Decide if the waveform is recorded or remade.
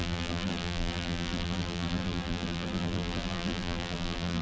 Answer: remade